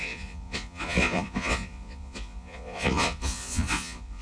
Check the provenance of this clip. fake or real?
fake